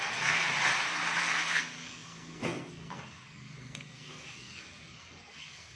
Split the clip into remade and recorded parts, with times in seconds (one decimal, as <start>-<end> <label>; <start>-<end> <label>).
0.0-0.5 remade; 0.5-1.2 recorded; 1.2-5.8 remade